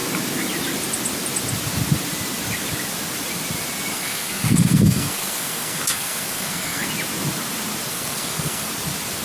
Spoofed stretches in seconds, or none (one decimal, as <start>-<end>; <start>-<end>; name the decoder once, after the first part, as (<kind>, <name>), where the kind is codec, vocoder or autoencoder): 3.9-6.9 (codec, SNAC); 7.9-8.7